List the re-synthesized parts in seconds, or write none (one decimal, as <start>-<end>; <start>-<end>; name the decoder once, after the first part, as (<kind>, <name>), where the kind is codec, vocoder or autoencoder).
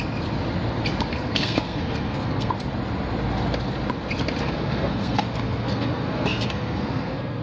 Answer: 1.1-2.5 (codec, SNAC); 4.4-7.4